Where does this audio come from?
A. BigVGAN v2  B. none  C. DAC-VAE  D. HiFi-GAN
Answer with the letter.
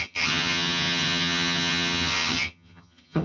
D